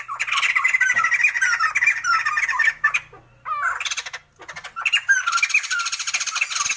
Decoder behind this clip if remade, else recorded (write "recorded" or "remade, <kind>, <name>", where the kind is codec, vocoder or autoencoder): recorded